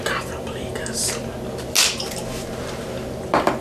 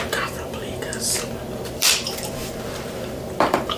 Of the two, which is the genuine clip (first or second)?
first